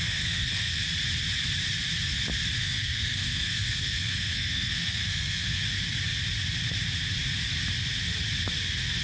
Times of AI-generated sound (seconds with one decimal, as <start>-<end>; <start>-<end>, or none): 0.0-0.8; 2.6-5.6